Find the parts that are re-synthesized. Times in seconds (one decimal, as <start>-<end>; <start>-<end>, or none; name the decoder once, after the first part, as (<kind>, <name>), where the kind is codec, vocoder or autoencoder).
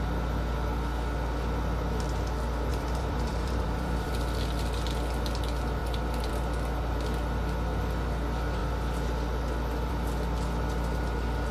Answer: 2.7-4.1 (vocoder, BigVGAN v2)